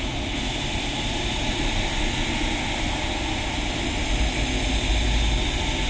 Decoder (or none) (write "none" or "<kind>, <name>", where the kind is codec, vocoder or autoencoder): none